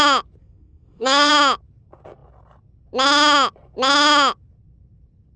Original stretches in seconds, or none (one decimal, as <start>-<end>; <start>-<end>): 0.0-0.4; 1.3-5.4